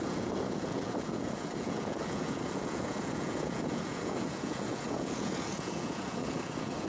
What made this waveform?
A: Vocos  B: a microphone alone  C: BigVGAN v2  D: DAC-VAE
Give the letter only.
A